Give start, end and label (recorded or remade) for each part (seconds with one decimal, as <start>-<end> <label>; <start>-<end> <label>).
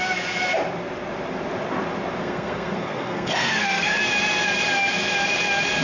0.0-2.2 recorded; 2.2-4.0 remade; 4.0-5.8 recorded